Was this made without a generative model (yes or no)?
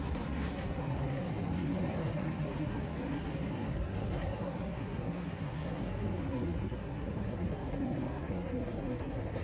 no